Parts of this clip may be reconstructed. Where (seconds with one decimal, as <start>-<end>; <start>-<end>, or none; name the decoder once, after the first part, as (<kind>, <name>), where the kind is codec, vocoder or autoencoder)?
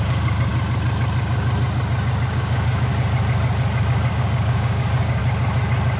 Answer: 0.0-0.5 (codec, DAC); 2.3-2.9; 4.1-5.2